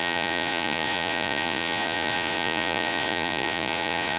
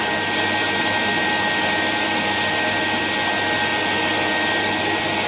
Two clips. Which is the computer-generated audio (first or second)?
first